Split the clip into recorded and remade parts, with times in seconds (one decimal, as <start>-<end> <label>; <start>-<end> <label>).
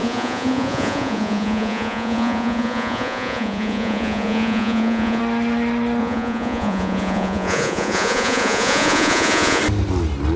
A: 0.0-5.2 remade; 5.2-6.0 recorded; 6.0-9.6 remade; 9.6-10.4 recorded